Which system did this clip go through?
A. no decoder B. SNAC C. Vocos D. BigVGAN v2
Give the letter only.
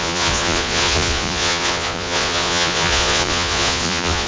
C